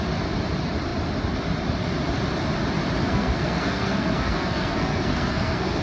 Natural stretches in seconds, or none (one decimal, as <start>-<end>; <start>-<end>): 0.0-3.0